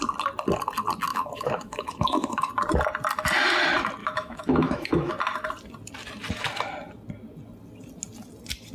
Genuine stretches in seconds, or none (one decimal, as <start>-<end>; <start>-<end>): 0.0-1.1; 2.5-4.0; 5.1-8.7